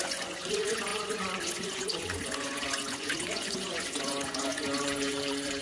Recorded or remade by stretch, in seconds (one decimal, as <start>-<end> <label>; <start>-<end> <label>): 0.0-5.6 remade